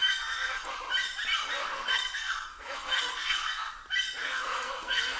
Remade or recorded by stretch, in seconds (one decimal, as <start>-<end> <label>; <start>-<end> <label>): 0.0-0.7 remade; 0.7-1.6 recorded; 1.6-3.7 remade; 3.7-4.2 recorded; 4.2-5.2 remade